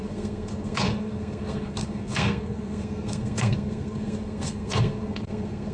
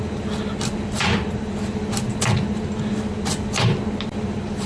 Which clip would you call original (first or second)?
second